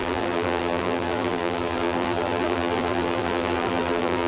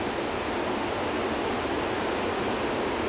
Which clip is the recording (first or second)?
second